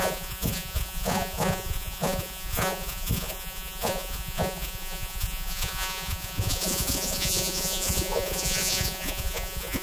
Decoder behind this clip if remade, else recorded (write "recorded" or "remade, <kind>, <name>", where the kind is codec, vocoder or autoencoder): remade, vocoder, Vocos